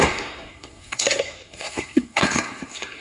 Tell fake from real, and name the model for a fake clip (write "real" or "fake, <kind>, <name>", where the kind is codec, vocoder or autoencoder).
fake, codec, SNAC